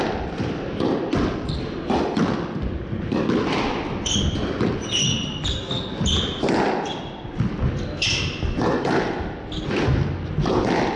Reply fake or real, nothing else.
real